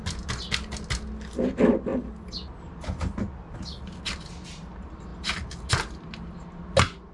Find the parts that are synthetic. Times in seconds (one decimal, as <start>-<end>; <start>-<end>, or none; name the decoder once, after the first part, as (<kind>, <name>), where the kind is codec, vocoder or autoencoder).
none